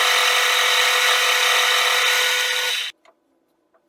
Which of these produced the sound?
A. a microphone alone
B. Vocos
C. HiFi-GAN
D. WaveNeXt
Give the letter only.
A